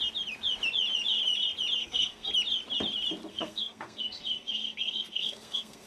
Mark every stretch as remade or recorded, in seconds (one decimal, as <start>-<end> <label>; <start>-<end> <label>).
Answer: 0.0-1.8 recorded; 1.8-2.3 remade; 2.3-3.3 recorded; 3.3-5.9 remade